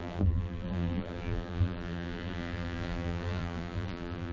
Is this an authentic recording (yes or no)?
no